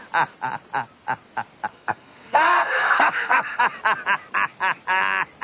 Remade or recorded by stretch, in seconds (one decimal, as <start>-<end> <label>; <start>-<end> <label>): 0.0-1.7 recorded; 1.7-3.6 remade; 3.6-5.4 recorded